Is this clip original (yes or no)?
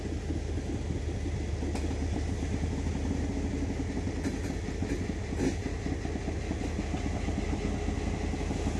yes